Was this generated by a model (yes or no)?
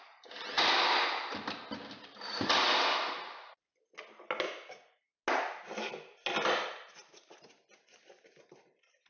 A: no